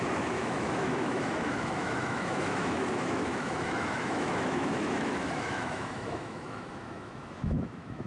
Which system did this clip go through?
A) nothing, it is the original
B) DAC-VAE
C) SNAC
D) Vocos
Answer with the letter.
B